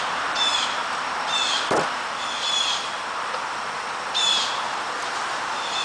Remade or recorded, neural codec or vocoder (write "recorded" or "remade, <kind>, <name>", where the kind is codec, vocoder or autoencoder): remade, vocoder, BigVGAN v2